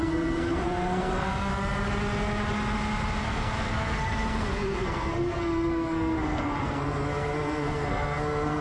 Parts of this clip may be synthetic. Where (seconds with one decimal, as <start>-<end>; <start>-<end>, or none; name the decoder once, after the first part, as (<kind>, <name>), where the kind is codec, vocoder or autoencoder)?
0.0-1.5 (codec, SNAC); 3.2-8.6